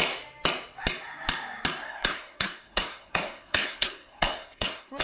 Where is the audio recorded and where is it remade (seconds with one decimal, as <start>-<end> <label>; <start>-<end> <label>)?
0.0-1.8 recorded; 1.8-5.0 remade